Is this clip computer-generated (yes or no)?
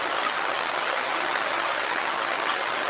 yes